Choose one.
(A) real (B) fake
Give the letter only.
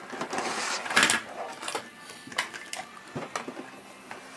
A